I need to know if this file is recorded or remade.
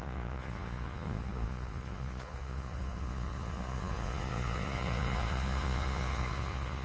remade